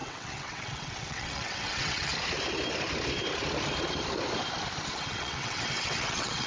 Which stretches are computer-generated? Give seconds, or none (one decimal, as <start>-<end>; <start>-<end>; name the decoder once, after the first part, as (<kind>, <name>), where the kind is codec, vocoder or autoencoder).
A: 0.0-2.1 (vocoder, WaveNeXt); 4.9-6.5